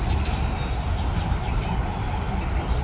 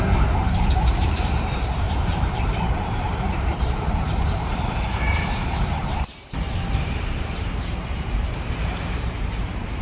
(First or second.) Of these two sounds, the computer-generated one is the second